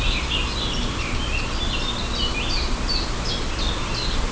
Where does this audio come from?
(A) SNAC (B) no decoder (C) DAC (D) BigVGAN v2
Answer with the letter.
B